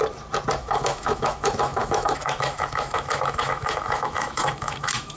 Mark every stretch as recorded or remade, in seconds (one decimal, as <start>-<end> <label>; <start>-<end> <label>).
0.0-0.6 recorded; 0.6-5.2 remade